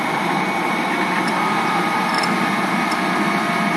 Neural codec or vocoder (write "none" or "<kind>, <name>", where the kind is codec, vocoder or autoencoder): none